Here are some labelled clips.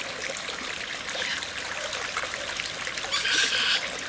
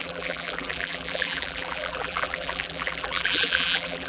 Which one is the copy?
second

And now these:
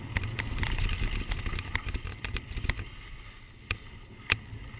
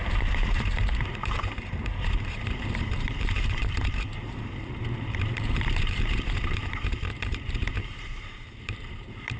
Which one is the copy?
second